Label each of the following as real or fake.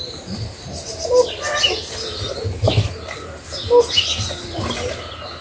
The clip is real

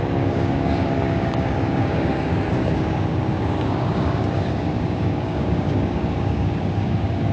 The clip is fake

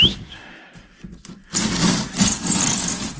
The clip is real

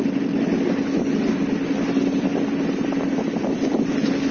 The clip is real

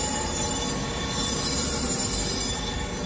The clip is real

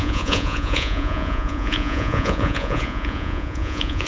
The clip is fake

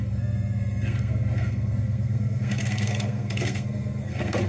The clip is fake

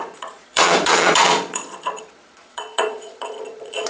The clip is fake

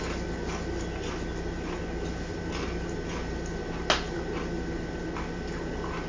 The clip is real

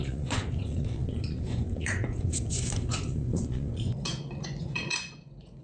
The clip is fake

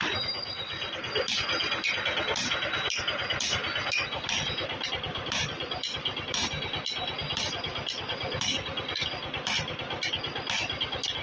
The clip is real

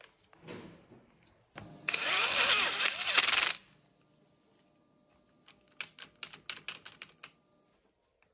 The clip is real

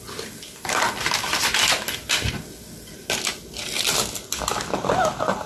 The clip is real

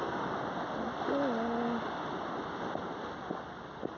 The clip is real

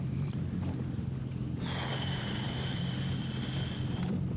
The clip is real